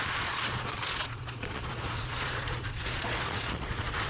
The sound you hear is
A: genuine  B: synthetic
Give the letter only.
B